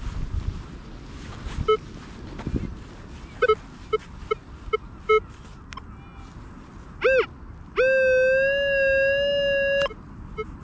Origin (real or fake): real